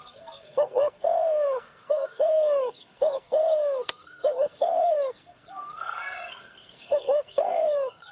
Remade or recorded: remade